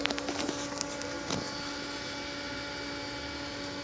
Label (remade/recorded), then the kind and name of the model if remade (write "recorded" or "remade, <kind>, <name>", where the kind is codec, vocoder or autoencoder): recorded